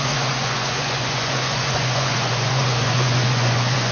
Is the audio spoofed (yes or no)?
yes